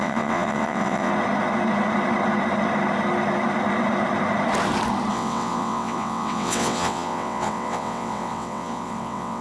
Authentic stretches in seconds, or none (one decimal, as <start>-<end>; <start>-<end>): 1.1-5.1